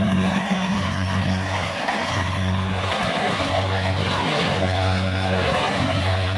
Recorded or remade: remade